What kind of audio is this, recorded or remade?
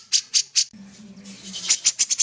recorded